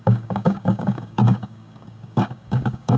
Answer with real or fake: fake